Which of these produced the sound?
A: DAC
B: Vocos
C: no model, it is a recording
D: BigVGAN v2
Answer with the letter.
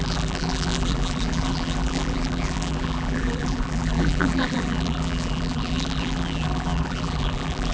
D